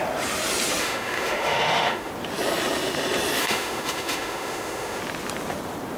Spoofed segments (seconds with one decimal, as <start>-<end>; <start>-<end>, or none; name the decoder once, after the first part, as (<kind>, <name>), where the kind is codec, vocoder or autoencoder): 0.8-2.1 (autoencoder, DAC-VAE); 3.4-5.0